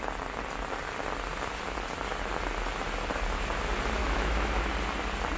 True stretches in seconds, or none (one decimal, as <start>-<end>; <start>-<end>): 0.0-4.0; 4.7-5.4